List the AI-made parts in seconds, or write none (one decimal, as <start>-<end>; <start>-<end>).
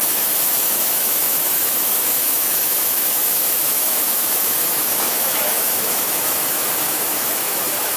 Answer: 0.0-8.0